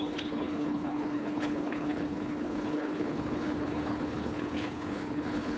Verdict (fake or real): fake